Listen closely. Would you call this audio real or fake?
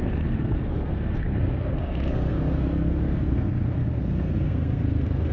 fake